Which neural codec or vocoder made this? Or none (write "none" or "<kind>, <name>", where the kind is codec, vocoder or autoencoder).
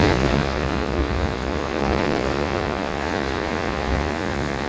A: vocoder, Vocos